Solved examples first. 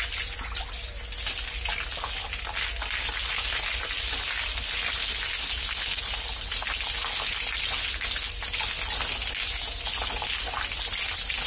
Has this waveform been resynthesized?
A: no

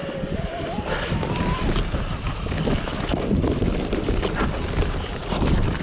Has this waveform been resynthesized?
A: no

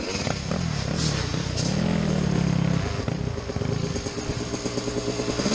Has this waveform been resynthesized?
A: no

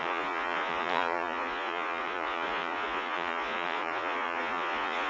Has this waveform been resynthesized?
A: yes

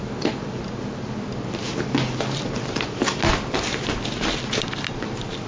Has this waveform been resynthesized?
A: no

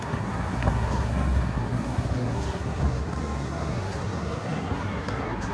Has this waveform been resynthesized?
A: yes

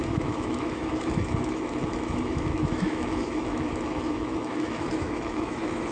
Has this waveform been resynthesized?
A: yes